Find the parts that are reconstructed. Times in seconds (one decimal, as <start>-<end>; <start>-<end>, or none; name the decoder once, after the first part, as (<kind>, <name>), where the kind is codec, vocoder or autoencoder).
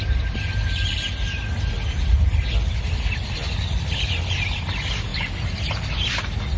none